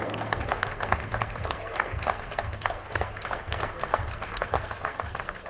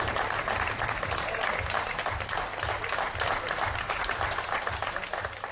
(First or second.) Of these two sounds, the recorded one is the second